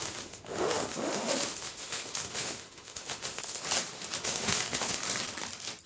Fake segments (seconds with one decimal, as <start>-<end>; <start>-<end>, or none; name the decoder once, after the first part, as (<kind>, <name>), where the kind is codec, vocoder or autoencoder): 0.0-3.6 (autoencoder, DAC-VAE); 4.2-5.0